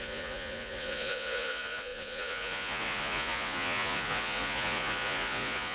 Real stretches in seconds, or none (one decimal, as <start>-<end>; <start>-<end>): none